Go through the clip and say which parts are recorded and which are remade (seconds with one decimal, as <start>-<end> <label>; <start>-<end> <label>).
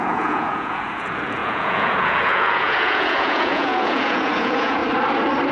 0.0-4.8 remade; 4.8-5.5 recorded